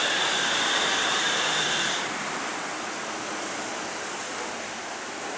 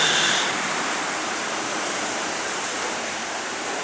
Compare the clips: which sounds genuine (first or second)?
first